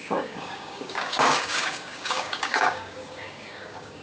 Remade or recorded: remade